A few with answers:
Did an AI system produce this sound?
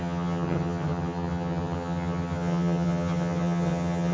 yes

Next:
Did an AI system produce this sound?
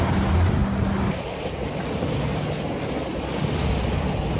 no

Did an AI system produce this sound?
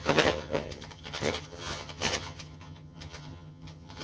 yes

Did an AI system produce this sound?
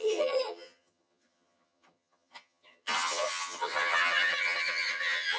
yes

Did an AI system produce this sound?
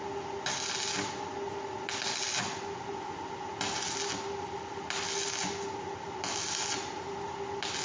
no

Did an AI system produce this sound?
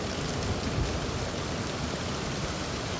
no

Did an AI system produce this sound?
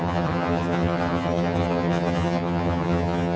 yes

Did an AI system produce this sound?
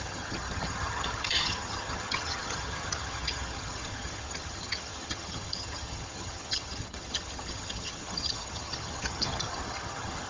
yes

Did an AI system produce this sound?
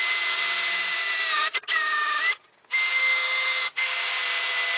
no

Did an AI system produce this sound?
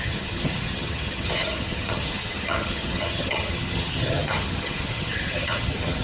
yes